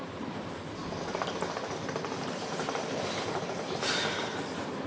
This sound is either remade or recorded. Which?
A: remade